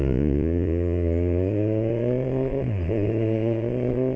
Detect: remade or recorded remade